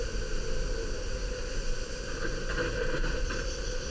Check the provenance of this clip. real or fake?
real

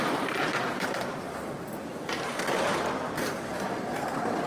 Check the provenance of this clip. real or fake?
fake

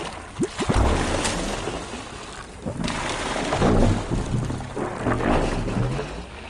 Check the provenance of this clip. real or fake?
real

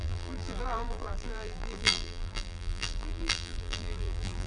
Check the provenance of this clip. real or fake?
fake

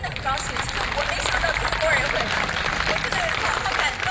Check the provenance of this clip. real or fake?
real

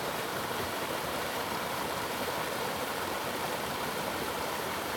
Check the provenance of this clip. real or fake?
fake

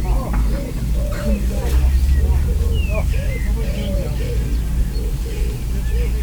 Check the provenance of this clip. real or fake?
real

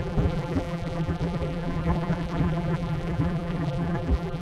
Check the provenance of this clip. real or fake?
fake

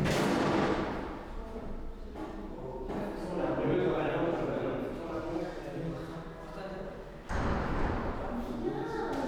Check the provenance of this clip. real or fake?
real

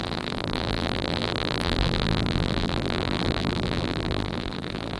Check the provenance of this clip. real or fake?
fake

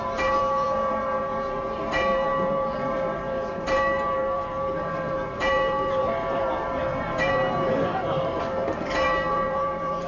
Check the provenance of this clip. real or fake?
fake